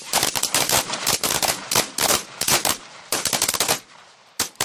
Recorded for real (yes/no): no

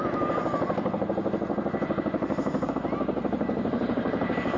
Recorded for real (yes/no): yes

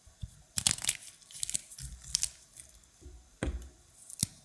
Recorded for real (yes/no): yes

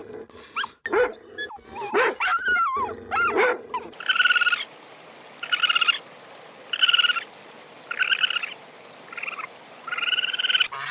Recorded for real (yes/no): yes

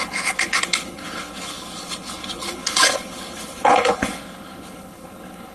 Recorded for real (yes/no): no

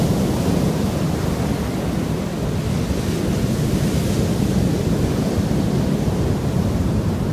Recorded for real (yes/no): yes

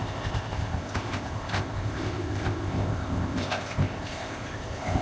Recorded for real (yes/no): no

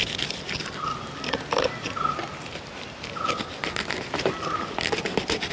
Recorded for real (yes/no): yes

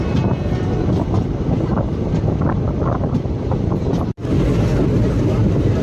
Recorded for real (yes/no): yes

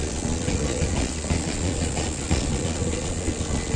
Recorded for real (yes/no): no